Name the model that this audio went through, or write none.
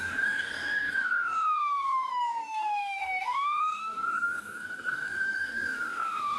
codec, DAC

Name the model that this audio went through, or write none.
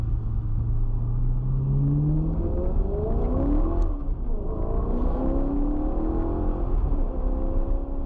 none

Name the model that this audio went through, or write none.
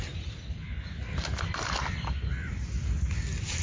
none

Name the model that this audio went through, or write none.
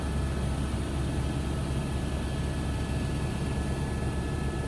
none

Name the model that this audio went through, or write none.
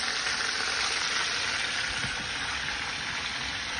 none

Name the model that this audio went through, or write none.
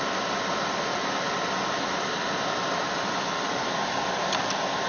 none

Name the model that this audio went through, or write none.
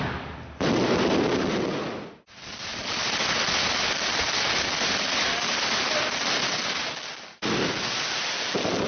none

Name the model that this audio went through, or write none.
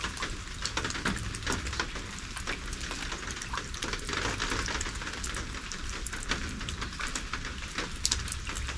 none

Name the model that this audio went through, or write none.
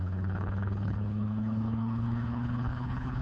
codec, HILCodec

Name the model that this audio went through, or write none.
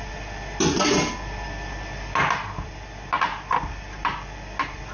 none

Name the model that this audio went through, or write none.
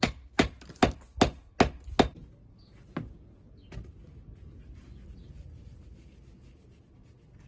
none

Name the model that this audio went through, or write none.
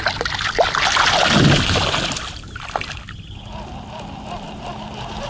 none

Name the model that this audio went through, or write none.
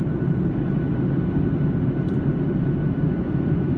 vocoder, BigVGAN v2